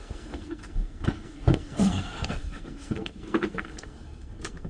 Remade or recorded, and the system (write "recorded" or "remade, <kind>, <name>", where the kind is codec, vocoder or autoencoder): remade, codec, SNAC